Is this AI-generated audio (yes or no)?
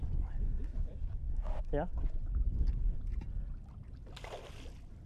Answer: no